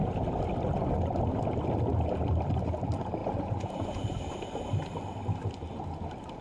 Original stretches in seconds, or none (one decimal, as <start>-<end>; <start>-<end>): 0.0-3.2; 4.1-6.4